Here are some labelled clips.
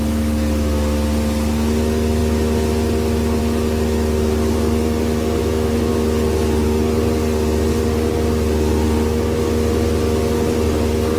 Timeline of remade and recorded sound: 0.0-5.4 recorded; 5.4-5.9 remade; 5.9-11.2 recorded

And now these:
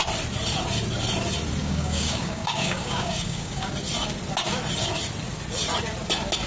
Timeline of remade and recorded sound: 0.0-1.6 recorded; 1.6-3.7 remade; 3.7-6.5 recorded